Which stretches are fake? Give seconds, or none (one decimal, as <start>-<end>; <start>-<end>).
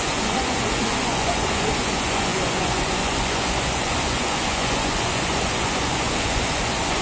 0.0-7.0